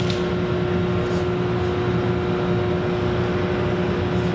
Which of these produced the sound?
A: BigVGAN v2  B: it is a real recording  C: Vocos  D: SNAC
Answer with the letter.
B